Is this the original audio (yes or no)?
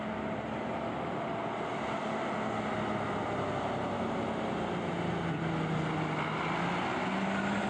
yes